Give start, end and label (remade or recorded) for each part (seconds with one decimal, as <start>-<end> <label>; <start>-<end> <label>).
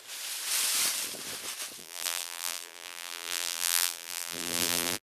0.0-1.8 recorded; 1.8-5.0 remade